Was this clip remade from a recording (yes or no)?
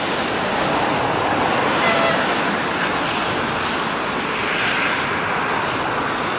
no